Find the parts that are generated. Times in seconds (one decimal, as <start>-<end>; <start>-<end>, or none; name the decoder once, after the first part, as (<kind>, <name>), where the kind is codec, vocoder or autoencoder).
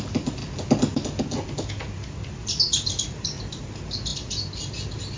none